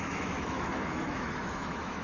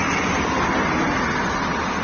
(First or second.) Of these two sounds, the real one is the second